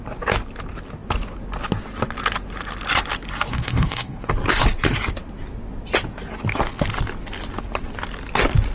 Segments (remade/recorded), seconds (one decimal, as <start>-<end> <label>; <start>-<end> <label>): 0.0-3.5 recorded; 3.5-4.3 remade; 4.3-8.7 recorded